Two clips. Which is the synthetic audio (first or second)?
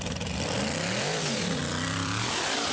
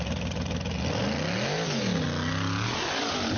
first